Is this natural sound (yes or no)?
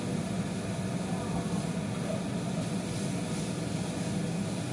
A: yes